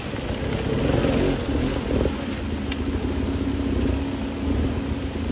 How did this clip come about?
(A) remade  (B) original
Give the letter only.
B